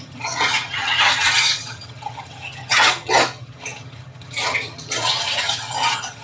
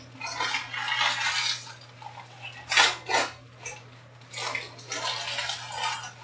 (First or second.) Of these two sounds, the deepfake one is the first